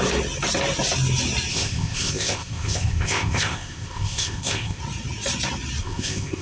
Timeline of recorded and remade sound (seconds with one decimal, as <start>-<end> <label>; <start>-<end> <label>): 0.0-1.5 recorded; 1.5-4.8 remade; 4.8-5.8 recorded; 5.8-6.4 remade